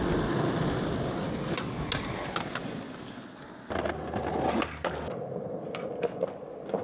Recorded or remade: recorded